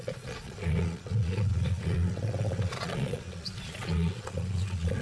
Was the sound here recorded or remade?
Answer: remade